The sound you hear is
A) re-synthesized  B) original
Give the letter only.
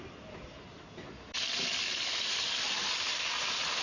B